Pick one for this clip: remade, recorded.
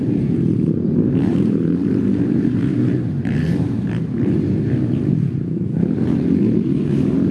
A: remade